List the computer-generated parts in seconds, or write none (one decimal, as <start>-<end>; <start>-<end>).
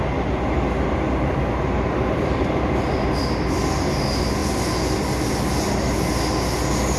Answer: none